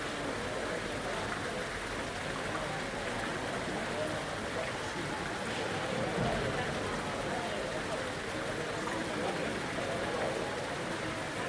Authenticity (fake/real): real